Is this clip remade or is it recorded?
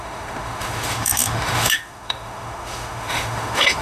remade